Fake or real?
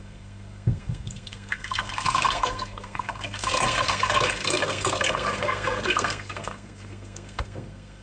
fake